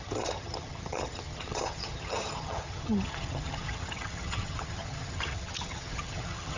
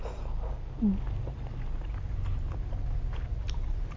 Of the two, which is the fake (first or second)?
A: first